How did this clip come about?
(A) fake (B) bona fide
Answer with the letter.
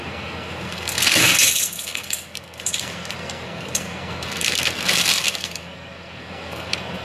A